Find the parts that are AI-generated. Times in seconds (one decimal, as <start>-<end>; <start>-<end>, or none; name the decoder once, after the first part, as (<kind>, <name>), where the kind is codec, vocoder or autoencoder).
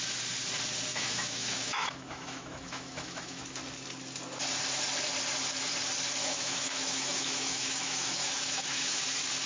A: 0.9-3.4 (autoencoder, DAC-VAE); 6.2-9.0